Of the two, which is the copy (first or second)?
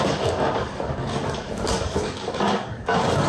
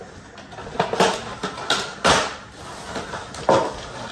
first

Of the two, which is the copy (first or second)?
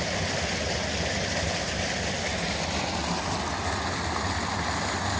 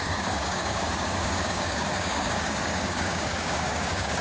second